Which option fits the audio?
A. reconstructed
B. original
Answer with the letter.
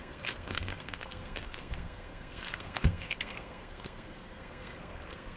A